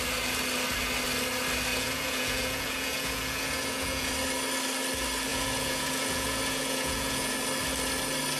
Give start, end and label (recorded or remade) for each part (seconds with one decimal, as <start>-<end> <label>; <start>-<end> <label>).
0.0-1.7 recorded; 1.7-4.1 remade; 4.1-5.3 recorded; 5.3-7.3 remade; 7.3-8.4 recorded